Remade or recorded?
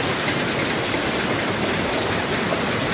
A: remade